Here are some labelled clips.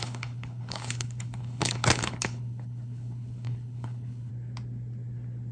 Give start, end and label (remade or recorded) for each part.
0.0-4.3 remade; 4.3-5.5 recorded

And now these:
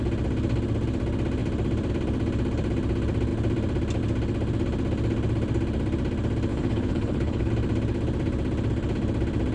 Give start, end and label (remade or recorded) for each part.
0.0-6.5 recorded; 6.5-7.5 remade; 7.5-9.5 recorded

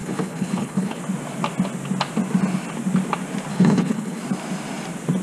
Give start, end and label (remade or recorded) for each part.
0.0-1.0 remade; 1.0-3.5 recorded; 3.5-4.2 remade; 4.2-5.2 recorded

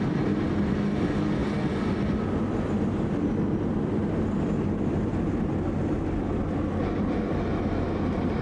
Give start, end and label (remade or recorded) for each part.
0.0-8.4 recorded

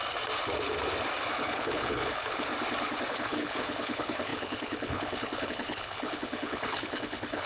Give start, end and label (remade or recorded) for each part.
0.0-1.3 recorded; 1.3-2.5 remade; 2.5-3.1 recorded; 3.1-7.5 remade

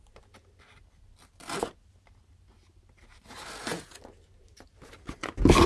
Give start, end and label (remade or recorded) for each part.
0.0-5.7 recorded

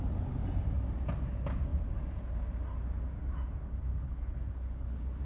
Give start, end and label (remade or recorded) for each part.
0.0-3.6 recorded; 3.6-5.2 remade

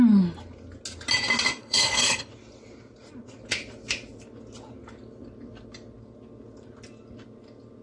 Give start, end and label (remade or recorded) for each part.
0.0-1.6 recorded; 1.6-2.3 remade; 2.3-7.8 recorded